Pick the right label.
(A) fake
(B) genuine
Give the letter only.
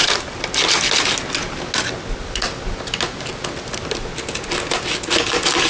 B